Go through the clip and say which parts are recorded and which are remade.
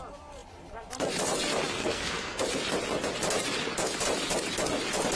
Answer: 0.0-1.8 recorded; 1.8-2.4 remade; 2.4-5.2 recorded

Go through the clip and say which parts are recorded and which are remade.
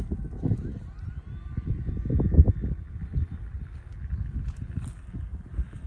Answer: 0.0-5.9 recorded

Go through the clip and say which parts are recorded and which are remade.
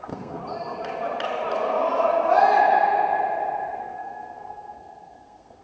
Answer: 0.0-0.4 remade; 0.4-3.8 recorded; 3.8-5.6 remade